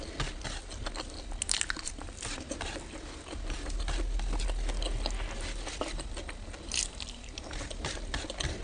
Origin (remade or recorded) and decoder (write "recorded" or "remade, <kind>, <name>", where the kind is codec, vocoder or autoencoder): recorded